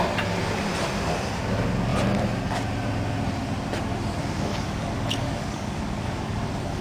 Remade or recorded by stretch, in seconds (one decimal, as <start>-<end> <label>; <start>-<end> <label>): 0.0-4.5 recorded; 4.5-6.8 remade